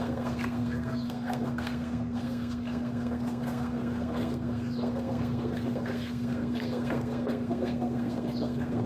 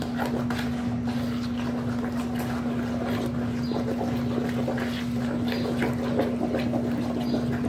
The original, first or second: second